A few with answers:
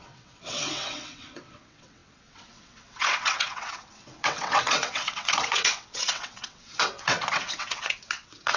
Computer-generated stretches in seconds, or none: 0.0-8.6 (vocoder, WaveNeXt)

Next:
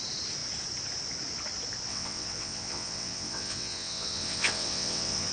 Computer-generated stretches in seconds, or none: 1.9-5.3 (vocoder, WaveNeXt)

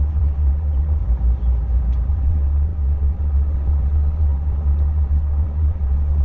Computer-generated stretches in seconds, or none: 0.0-1.0 (vocoder, WaveNeXt); 2.1-6.2

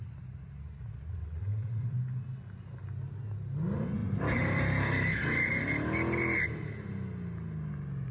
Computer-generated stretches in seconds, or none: 1.2-1.9 (vocoder, WaveNeXt)

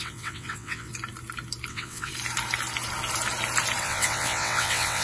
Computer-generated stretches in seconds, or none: 0.0-0.9 (vocoder, WaveNeXt); 1.7-2.1; 3.8-5.0

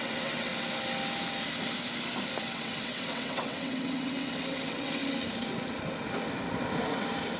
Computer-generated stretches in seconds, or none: 0.0-0.5 (vocoder, WaveNeXt); 2.4-5.0

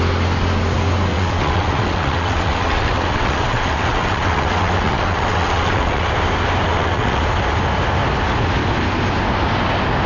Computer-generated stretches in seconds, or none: 1.1-6.1 (vocoder, WaveNeXt); 6.7-7.2